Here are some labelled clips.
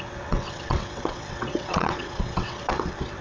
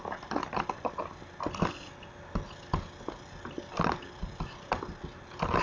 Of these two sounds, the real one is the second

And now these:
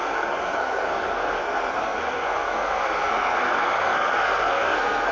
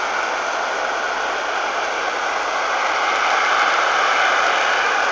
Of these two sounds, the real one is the second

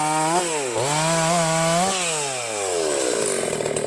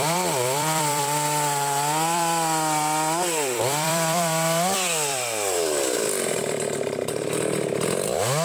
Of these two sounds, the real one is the first